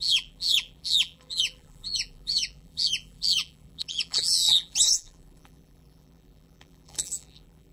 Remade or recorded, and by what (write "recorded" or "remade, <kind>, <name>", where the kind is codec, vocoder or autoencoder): remade, vocoder, BigVGAN v2